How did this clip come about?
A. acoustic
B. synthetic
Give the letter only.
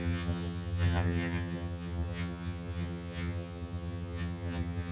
B